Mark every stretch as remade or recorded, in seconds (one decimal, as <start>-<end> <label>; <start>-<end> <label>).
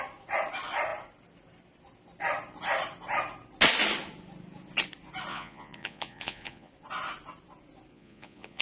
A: 0.0-5.3 recorded; 5.3-6.7 remade; 6.7-7.9 recorded; 7.9-8.6 remade